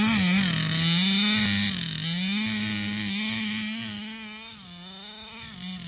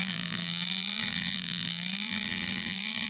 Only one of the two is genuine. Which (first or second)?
first